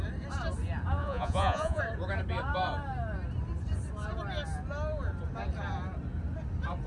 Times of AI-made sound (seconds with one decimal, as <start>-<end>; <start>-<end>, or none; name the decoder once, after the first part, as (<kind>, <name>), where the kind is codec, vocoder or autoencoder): 1.0-1.8 (vocoder, Vocos)